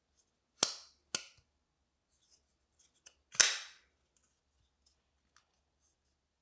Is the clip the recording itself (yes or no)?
yes